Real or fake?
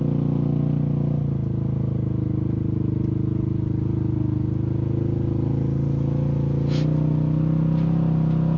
real